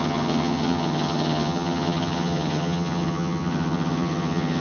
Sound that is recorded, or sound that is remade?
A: remade